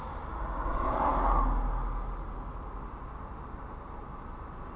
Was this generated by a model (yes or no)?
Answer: no